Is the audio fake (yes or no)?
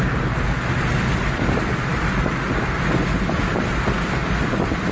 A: no